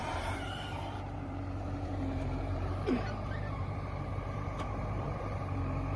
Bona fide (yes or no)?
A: no